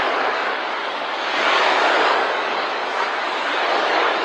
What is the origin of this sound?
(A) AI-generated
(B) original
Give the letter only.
A